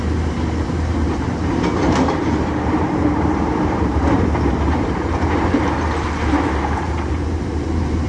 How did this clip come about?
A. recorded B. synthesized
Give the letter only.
B